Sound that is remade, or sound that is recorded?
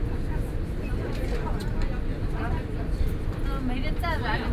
recorded